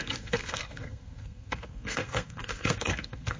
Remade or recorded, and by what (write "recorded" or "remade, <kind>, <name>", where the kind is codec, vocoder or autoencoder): remade, codec, SNAC